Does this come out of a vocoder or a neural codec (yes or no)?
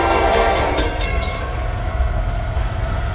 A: yes